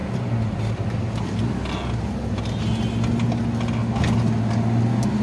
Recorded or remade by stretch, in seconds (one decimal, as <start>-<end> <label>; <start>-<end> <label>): 0.0-5.2 recorded